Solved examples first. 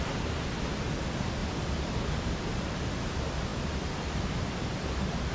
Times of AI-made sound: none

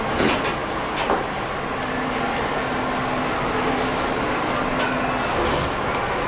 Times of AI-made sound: none

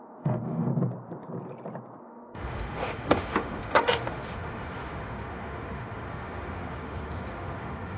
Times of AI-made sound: 0.0-0.7 (autoencoder, DAC-VAE); 2.0-8.0

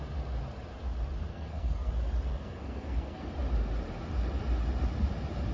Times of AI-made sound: 1.3-1.9 (codec, SNAC); 2.3-3.3

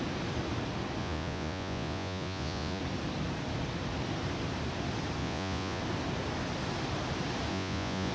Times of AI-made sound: 1.0-2.8 (vocoder, Vocos); 5.2-5.8; 7.5-8.1

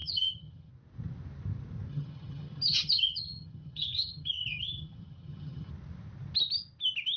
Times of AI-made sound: 0.0-0.7 (vocoder, HiFi-GAN); 1.9-5.7

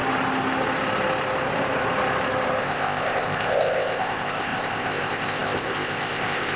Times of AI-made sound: 2.6-6.6 (codec, ZipCodec)